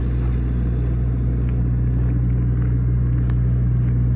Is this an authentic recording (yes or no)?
yes